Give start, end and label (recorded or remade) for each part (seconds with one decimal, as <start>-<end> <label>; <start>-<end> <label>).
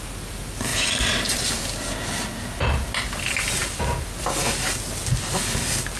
0.0-0.7 recorded; 0.7-1.5 remade; 1.5-6.0 recorded